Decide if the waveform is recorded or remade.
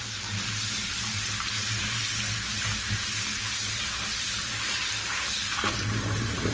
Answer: remade